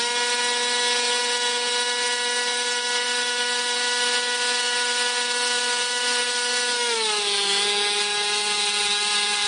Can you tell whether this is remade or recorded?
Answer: recorded